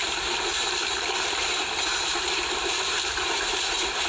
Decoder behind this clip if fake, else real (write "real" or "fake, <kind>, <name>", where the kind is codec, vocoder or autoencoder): fake, vocoder, BigVGAN v2